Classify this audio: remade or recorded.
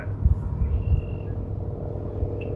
recorded